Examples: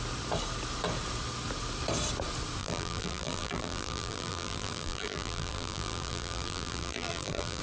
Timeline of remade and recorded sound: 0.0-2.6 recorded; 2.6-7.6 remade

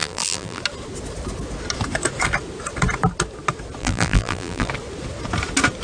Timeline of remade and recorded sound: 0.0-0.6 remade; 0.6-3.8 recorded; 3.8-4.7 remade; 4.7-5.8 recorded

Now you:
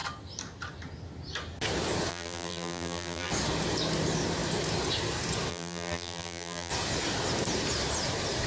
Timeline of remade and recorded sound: 0.0-2.1 recorded; 2.1-3.3 remade; 3.3-5.5 recorded; 5.5-6.7 remade; 6.7-8.5 recorded

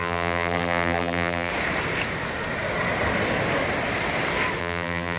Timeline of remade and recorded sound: 0.0-1.5 remade; 1.5-4.6 recorded; 4.6-5.2 remade

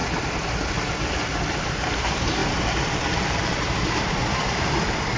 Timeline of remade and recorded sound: 0.0-1.6 recorded; 1.6-2.4 remade; 2.4-3.2 recorded; 3.2-5.2 remade

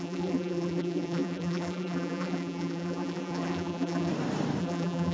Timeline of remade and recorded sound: 0.0-4.1 remade; 4.1-4.6 recorded; 4.6-5.1 remade